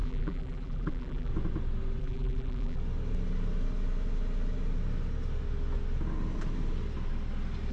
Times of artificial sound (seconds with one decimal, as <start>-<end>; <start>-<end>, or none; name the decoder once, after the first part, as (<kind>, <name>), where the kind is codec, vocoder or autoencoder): 0.0-1.3 (vocoder, BigVGAN v2); 2.0-2.8